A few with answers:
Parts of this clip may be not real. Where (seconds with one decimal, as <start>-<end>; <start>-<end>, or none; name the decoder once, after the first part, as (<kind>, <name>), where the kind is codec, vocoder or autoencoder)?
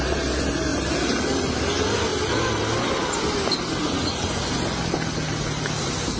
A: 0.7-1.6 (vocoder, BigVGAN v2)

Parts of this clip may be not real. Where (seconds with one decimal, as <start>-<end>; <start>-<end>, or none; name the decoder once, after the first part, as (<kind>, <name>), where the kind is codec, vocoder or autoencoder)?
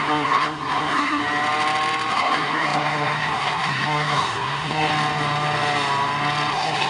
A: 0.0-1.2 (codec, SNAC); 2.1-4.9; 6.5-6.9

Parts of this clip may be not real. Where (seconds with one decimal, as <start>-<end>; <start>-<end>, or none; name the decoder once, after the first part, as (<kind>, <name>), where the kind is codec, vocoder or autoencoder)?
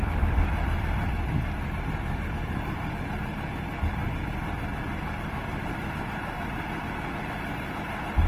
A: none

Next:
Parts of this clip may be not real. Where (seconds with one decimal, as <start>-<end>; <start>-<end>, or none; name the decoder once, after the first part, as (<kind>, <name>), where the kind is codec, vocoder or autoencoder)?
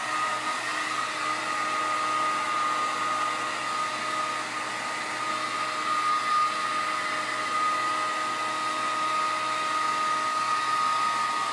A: none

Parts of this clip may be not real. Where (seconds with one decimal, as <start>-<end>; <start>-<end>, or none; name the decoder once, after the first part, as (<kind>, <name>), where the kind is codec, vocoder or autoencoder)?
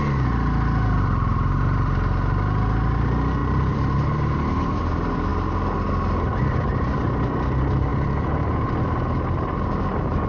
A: 3.4-4.8 (vocoder, BigVGAN v2); 7.9-8.7